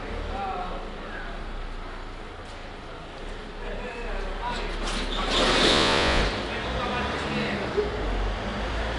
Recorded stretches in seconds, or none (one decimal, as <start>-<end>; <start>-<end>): 0.0-5.7; 6.2-9.0